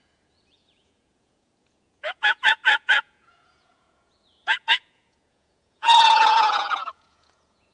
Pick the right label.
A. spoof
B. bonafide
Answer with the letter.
A